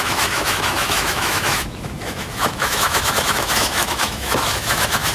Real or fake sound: fake